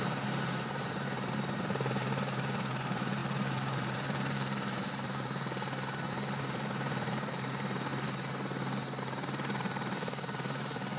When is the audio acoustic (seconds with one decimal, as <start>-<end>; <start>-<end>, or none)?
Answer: 7.9-9.0